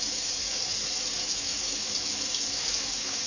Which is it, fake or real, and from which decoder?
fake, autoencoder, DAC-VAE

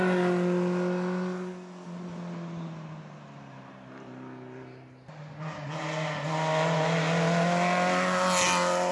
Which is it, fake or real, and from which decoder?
real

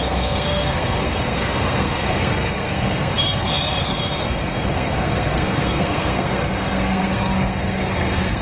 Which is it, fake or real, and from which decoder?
fake, codec, SNAC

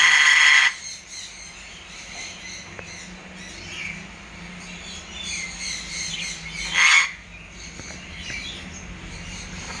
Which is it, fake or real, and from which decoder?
real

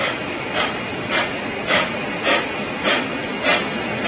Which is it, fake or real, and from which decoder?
real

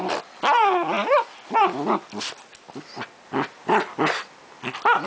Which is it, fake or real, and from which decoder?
real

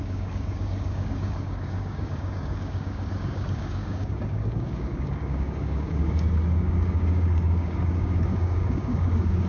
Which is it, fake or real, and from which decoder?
fake, codec, DAC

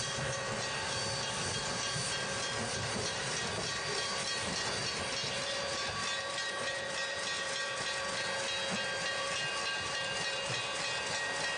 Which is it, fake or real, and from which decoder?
real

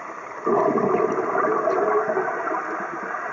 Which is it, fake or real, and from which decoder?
real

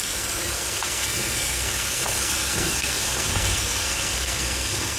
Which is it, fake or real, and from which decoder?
fake, codec, SNAC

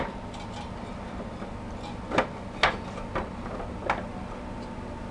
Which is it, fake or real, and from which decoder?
real